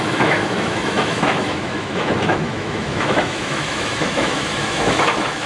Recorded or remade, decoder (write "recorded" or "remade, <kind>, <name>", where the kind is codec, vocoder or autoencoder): remade, autoencoder, DAC-VAE